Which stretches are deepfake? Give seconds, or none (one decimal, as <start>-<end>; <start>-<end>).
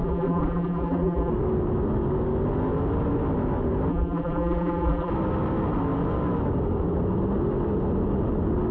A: 0.0-1.3; 3.9-5.1